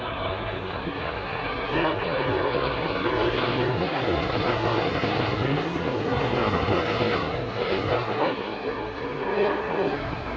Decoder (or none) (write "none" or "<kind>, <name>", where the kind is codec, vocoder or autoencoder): codec, SNAC